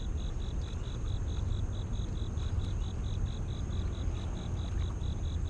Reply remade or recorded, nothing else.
recorded